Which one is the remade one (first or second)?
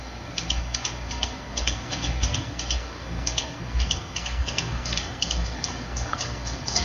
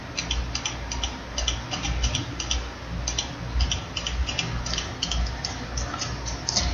first